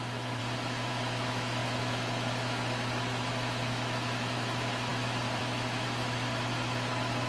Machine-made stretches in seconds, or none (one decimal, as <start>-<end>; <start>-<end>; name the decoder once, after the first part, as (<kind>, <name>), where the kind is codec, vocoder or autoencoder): 0.0-0.4 (autoencoder, DAC-VAE); 0.9-7.3